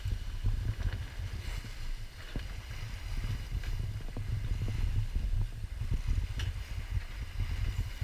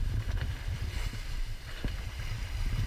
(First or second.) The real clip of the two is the first